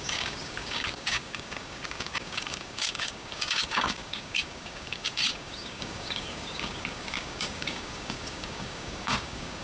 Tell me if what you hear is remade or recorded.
remade